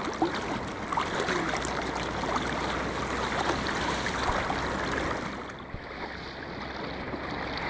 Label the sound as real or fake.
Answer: real